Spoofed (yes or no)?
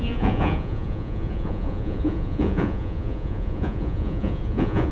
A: yes